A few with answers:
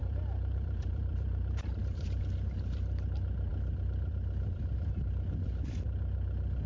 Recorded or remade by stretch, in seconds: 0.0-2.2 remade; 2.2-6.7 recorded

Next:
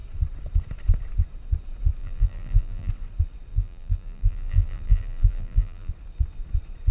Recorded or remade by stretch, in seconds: 0.0-2.0 recorded; 2.0-2.9 remade; 2.9-3.5 recorded; 3.5-5.9 remade; 5.9-6.9 recorded